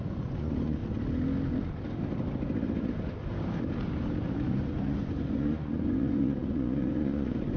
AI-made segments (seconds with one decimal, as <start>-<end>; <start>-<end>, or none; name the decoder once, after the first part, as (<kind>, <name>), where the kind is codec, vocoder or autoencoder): 0.0-0.8 (vocoder, Vocos); 4.5-7.6